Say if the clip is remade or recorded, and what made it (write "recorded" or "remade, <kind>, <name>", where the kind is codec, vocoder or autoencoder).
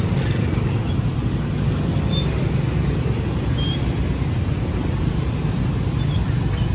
recorded